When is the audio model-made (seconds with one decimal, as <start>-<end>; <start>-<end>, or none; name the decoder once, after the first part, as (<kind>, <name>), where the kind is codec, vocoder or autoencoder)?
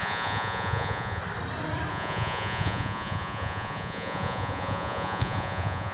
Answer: 0.0-1.2 (vocoder, Vocos); 1.9-5.9